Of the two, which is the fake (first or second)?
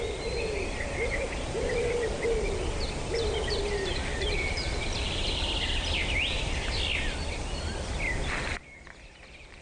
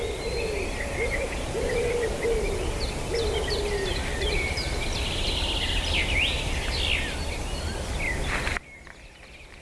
first